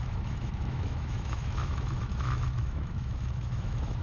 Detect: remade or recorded remade